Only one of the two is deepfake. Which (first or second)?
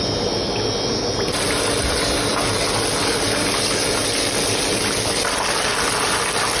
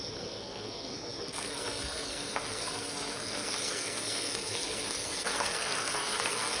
second